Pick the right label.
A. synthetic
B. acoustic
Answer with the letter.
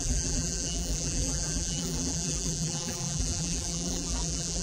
A